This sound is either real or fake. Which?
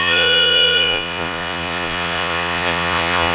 fake